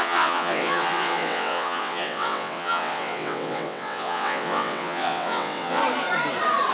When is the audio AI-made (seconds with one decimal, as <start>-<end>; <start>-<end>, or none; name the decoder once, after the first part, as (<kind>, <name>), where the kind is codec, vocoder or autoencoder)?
0.0-5.8 (vocoder, WaveNeXt)